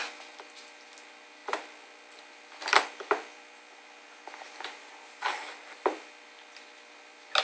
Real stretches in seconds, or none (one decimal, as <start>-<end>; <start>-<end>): 0.0-7.4